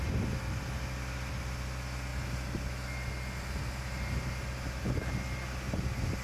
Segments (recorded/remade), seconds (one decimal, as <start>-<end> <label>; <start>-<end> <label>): 0.0-6.2 recorded